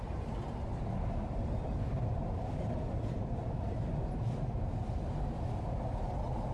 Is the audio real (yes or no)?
yes